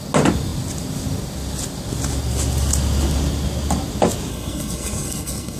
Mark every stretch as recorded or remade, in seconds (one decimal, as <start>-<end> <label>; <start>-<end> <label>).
0.0-4.3 recorded; 4.3-5.6 remade